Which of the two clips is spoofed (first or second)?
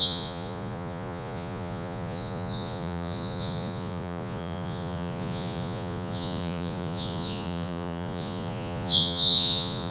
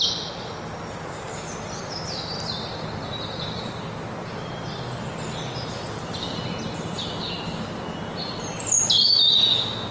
first